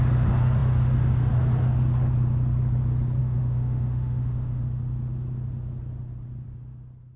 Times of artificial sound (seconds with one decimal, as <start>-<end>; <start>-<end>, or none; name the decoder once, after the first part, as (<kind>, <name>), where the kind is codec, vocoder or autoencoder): 3.2-4.6 (autoencoder, DAC-VAE)

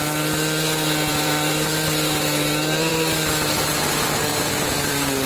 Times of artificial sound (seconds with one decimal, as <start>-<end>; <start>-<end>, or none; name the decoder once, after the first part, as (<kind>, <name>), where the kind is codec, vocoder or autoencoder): 1.1-2.9 (vocoder, BigVGAN v2); 4.3-5.3

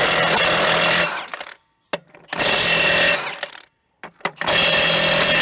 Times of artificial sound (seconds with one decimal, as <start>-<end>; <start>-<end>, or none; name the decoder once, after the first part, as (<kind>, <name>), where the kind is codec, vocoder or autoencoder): none

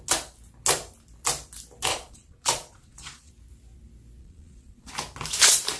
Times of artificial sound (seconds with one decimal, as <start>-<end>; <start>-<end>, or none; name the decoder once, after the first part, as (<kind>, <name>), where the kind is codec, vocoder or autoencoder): 1.9-3.3 (vocoder, Vocos); 4.2-4.9